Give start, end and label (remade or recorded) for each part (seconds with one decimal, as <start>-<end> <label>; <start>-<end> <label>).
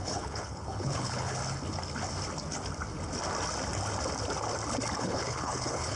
0.0-1.4 remade; 1.4-5.0 recorded; 5.0-6.0 remade